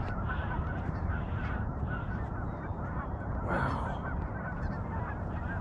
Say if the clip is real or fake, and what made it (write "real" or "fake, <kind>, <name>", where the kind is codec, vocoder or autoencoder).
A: fake, vocoder, BigVGAN v2